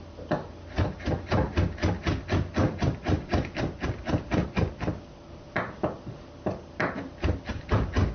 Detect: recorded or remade remade